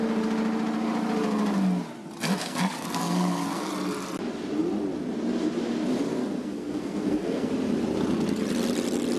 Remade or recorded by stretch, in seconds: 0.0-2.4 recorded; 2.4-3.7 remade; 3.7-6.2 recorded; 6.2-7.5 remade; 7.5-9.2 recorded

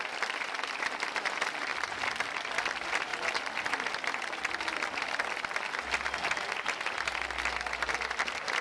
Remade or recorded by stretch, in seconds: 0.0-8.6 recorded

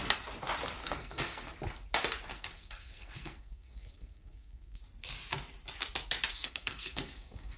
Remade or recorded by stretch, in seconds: 0.0-0.8 recorded; 0.8-1.5 remade; 1.5-2.3 recorded; 2.3-4.8 remade; 4.8-6.3 recorded; 6.3-7.6 remade